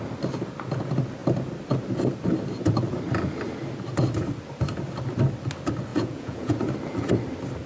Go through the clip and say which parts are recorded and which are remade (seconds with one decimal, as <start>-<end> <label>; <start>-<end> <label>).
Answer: 0.0-5.9 recorded; 5.9-6.6 remade; 6.6-7.7 recorded